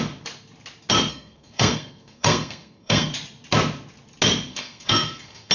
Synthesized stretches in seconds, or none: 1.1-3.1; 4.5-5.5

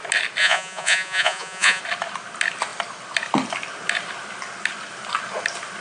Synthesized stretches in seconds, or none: 0.4-1.8

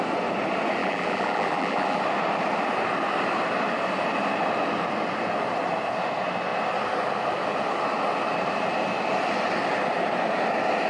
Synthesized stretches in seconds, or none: 0.8-2.0